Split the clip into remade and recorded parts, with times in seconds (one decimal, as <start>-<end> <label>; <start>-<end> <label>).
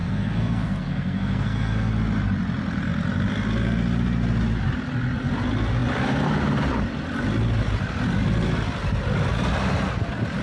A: 0.0-1.9 remade; 1.9-10.4 recorded